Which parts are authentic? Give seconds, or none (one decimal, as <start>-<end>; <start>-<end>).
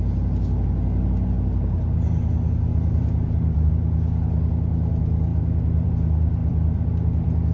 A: 0.0-2.7; 3.7-5.3; 5.9-6.4